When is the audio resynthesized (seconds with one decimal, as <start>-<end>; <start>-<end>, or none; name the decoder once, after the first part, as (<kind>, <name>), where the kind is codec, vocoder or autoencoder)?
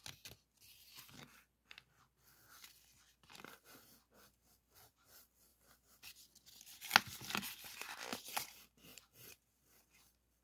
2.0-5.5 (vocoder, BigVGAN v2); 8.2-10.4